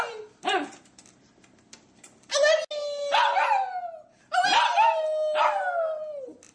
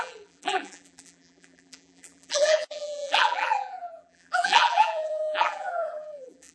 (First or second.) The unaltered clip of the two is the first